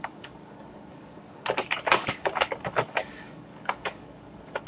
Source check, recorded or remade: remade